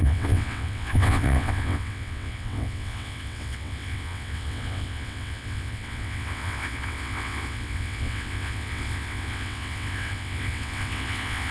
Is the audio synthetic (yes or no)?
yes